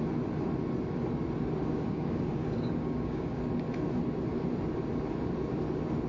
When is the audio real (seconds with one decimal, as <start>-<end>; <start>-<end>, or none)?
0.0-1.6; 3.5-6.1